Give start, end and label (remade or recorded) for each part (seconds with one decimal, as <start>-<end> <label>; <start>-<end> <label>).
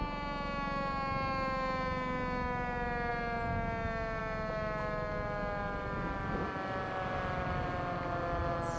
0.0-8.8 recorded